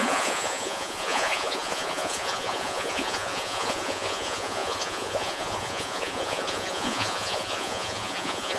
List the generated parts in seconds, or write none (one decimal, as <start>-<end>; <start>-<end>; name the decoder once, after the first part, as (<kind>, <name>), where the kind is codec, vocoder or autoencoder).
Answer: 0.0-8.6 (vocoder, Vocos)